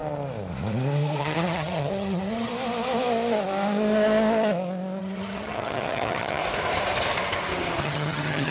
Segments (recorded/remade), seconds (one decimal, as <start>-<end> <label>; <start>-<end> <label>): 0.0-1.2 recorded; 1.2-2.5 remade; 2.5-5.0 recorded; 5.0-6.4 remade; 6.4-7.8 recorded; 7.8-8.5 remade